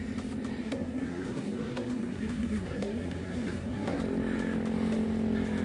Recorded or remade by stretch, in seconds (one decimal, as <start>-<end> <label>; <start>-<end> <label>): 0.0-0.6 recorded; 0.6-4.0 remade; 4.0-5.6 recorded